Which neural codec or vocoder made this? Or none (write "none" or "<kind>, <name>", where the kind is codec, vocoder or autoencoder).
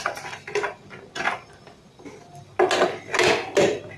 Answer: none